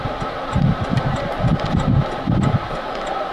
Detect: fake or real fake